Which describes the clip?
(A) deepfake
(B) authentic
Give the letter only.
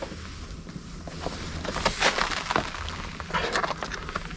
B